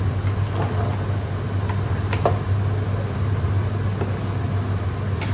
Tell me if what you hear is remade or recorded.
recorded